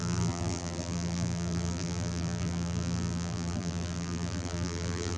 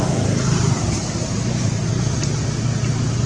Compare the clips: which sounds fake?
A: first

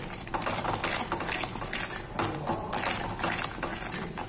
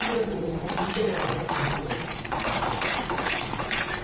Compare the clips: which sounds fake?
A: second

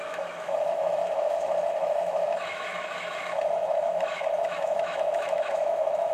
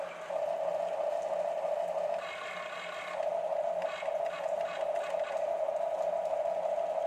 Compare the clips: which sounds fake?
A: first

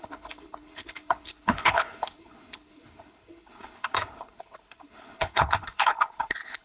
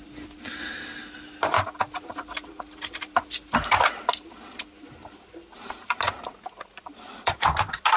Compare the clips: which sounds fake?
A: first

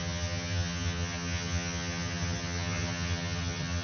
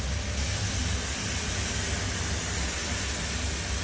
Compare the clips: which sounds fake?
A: first